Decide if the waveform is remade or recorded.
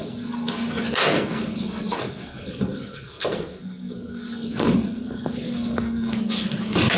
remade